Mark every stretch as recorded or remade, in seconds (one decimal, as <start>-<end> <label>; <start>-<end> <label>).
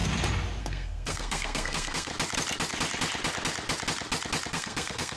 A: 0.0-0.6 recorded; 0.6-2.1 remade; 2.1-4.5 recorded; 4.5-5.2 remade